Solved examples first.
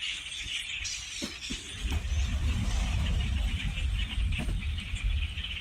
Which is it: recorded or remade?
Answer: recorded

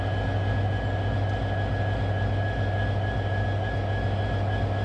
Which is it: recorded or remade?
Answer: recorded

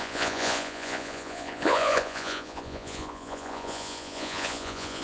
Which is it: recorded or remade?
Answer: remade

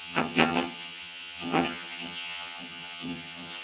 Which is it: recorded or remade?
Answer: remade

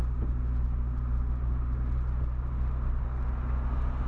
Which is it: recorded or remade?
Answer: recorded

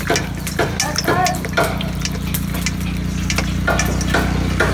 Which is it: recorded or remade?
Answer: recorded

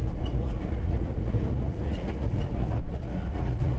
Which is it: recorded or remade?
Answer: remade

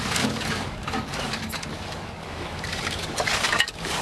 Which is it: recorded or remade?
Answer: remade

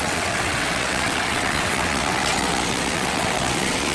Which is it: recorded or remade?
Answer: remade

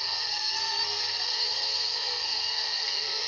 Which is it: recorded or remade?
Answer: remade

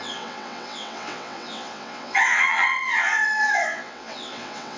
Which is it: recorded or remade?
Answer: remade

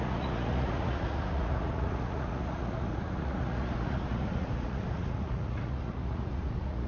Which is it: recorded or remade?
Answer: remade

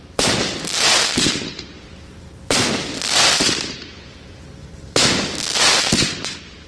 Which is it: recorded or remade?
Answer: recorded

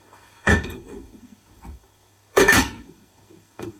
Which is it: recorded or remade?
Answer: remade